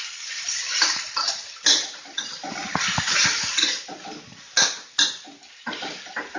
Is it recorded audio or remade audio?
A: recorded